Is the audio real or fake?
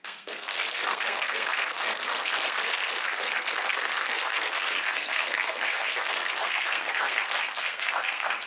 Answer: fake